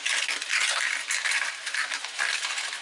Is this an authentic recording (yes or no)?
yes